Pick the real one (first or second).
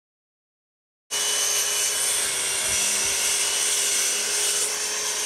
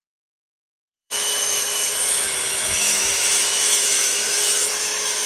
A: first